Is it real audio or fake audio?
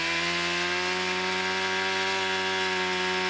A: real